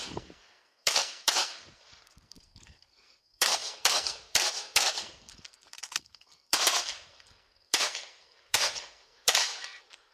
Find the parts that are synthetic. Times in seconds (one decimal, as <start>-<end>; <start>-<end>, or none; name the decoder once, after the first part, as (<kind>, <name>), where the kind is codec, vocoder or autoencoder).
0.0-10.1 (codec, SNAC)